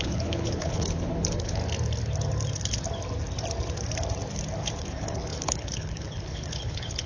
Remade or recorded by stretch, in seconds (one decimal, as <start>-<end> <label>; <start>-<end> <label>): 0.0-1.6 remade; 1.6-4.8 recorded; 4.8-7.1 remade